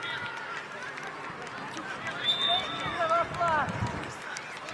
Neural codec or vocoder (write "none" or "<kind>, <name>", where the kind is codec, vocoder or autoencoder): none